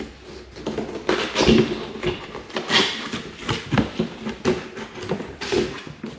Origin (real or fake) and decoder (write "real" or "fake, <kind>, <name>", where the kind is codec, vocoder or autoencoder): real